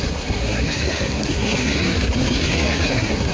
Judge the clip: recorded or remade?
remade